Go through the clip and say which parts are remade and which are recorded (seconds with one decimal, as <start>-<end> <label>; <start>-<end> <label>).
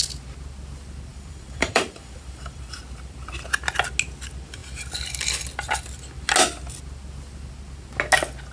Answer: 0.0-1.1 recorded; 1.1-2.8 remade; 2.8-8.5 recorded